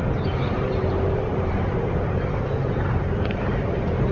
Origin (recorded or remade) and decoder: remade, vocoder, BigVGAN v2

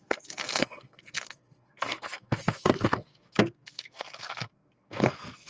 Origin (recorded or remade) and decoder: remade, codec, SNAC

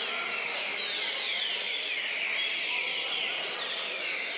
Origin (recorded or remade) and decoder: recorded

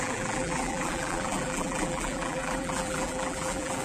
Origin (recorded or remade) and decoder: remade, vocoder, BigVGAN v2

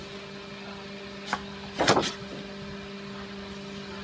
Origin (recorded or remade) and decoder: recorded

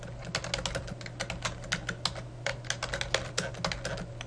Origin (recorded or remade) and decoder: recorded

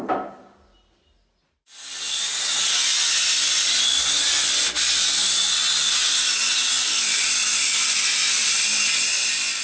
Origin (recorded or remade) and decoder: recorded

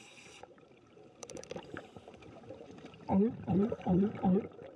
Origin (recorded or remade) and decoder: remade, vocoder, BigVGAN v2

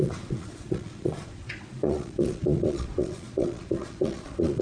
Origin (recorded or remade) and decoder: remade, vocoder, Vocos